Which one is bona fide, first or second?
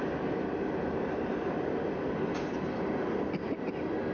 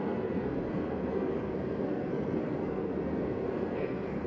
first